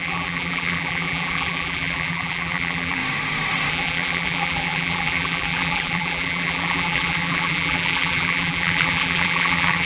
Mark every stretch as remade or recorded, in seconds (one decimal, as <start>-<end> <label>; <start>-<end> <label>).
0.0-3.0 remade; 3.0-3.7 recorded; 3.7-9.9 remade